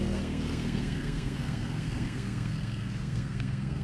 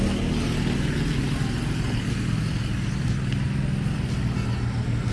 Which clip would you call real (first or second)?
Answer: second